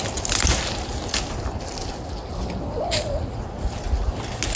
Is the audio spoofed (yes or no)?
no